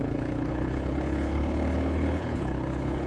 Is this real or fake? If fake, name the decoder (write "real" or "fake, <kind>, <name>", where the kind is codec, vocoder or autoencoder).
fake, codec, HILCodec